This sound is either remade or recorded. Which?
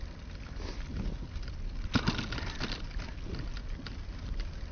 recorded